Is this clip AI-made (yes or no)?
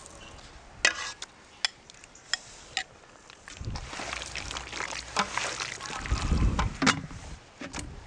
no